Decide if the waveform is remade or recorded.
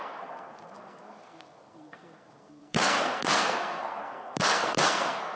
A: remade